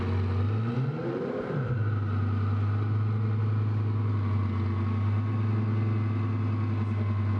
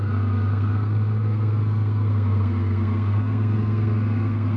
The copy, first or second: second